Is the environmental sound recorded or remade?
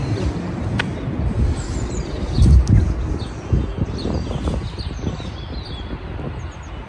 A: recorded